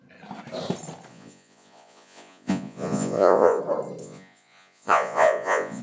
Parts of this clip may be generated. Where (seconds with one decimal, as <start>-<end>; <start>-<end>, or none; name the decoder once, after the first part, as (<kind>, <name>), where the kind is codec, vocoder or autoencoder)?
1.1-3.6 (vocoder, Vocos); 4.0-5.8